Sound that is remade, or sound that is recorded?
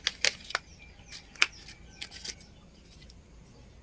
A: recorded